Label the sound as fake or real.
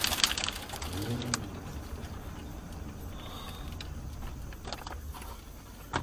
real